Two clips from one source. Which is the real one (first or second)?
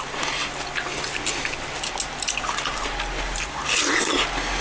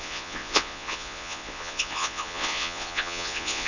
first